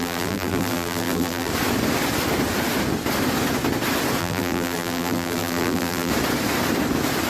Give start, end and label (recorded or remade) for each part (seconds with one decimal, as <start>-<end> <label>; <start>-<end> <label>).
0.0-1.5 remade; 1.5-4.2 recorded; 4.2-6.1 remade; 6.1-7.3 recorded